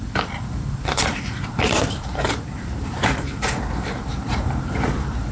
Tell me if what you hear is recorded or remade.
remade